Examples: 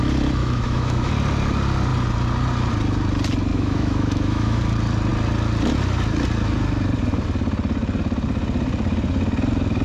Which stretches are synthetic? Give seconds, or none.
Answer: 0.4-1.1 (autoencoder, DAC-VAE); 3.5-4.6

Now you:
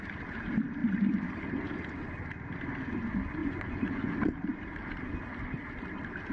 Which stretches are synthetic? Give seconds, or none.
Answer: 3.4-4.1 (vocoder, Vocos)

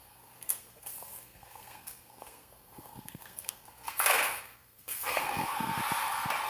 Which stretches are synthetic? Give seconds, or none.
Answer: 0.0-5.8 (codec, SNAC)

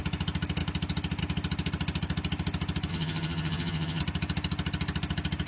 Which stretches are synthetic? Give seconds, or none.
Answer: 2.9-4.0 (vocoder, HiFi-GAN)

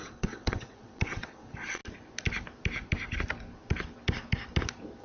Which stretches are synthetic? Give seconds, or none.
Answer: 0.0-1.8 (vocoder, WaveNeXt)